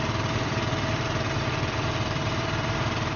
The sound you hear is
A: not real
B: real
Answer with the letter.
A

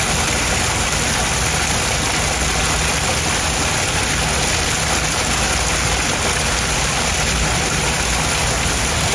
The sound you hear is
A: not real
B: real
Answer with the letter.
B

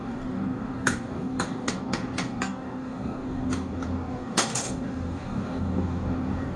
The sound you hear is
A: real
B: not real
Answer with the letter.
B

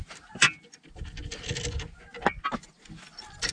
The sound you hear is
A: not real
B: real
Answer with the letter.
B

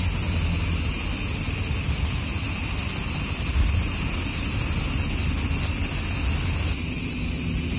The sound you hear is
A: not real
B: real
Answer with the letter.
B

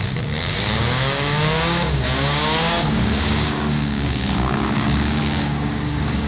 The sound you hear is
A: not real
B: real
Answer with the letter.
A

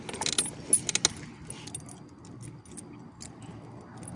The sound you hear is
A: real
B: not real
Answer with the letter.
A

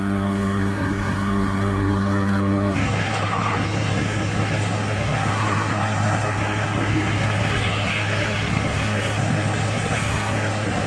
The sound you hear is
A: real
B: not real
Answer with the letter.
B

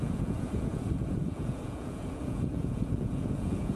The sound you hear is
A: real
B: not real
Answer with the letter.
B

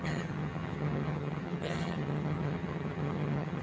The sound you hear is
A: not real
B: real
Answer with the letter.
A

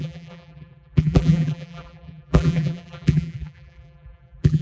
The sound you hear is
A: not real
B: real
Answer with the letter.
A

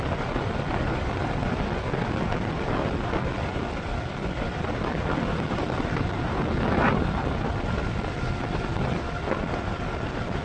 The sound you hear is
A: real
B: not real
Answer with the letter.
A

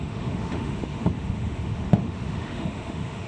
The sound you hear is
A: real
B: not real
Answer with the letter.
B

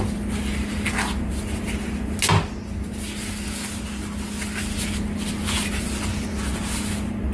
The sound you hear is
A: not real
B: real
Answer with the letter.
B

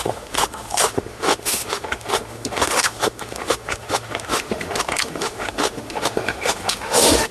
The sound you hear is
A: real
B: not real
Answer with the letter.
B